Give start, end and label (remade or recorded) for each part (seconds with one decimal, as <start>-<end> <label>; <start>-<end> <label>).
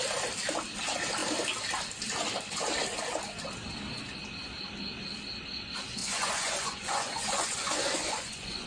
0.0-6.0 recorded; 6.0-8.7 remade